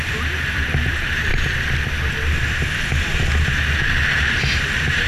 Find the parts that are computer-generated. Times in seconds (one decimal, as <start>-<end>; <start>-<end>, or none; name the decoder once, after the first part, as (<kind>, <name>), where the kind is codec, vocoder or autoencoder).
0.0-1.3 (vocoder, BigVGAN v2); 4.1-5.1